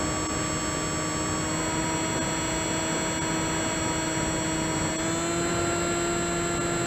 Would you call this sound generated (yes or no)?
no